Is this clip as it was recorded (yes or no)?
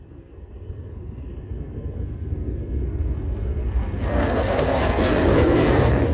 no